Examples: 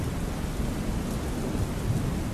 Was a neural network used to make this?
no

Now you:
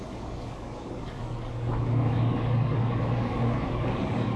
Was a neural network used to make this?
yes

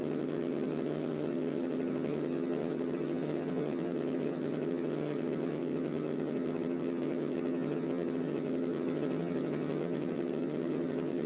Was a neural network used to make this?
yes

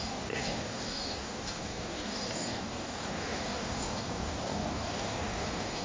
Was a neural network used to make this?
yes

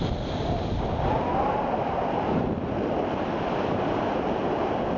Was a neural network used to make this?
no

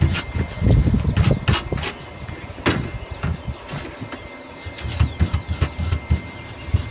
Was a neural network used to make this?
no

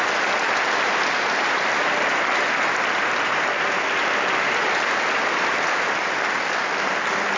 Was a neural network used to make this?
no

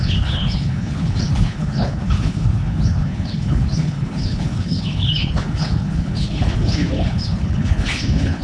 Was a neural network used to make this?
yes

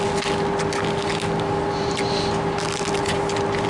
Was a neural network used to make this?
no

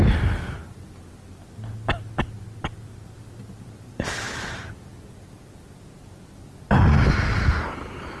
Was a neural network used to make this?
no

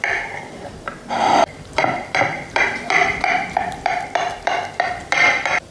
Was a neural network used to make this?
yes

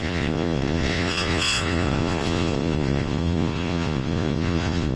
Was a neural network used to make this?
yes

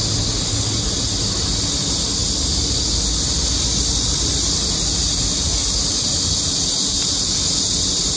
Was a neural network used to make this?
no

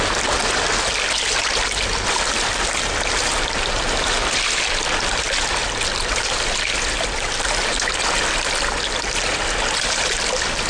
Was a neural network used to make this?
no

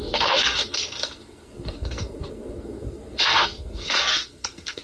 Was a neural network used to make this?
yes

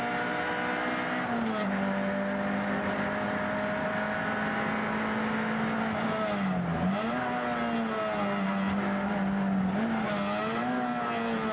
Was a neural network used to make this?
no